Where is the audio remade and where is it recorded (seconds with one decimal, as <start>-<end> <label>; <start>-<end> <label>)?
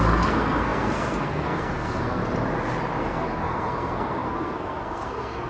0.0-2.2 remade; 2.2-3.0 recorded; 3.0-5.5 remade